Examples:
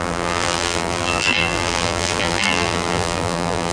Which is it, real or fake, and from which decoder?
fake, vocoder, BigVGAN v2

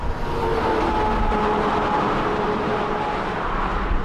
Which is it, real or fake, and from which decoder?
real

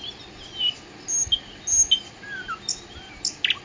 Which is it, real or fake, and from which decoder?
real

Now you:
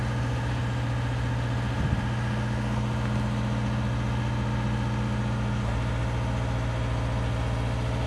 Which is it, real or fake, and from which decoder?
real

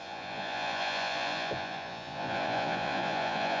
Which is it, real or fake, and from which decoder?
fake, vocoder, Vocos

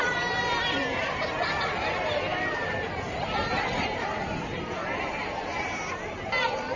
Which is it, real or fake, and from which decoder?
real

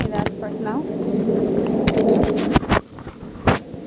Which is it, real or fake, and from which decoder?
real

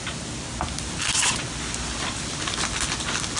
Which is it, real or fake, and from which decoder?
real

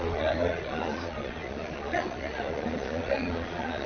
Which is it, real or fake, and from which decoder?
fake, vocoder, Vocos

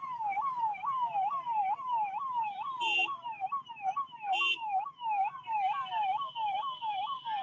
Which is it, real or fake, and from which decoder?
fake, vocoder, BigVGAN v2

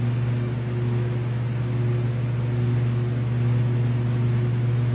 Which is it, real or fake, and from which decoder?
real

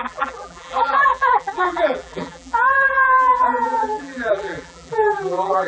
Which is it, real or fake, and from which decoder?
fake, vocoder, BigVGAN v2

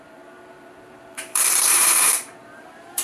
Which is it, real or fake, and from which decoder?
fake, vocoder, BigVGAN v2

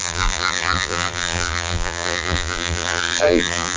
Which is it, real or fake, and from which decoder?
fake, vocoder, BigVGAN v2